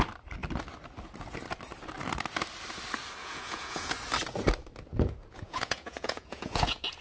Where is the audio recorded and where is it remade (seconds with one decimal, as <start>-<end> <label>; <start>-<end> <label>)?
0.0-3.2 recorded; 3.2-3.9 remade; 3.9-5.2 recorded; 5.2-7.0 remade